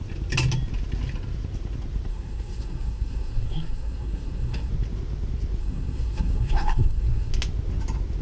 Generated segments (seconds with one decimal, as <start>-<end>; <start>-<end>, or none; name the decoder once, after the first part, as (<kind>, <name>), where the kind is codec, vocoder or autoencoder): 2.1-4.7 (codec, SNAC); 5.6-7.3